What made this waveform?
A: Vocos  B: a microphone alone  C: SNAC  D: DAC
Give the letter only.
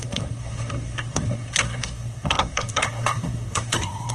C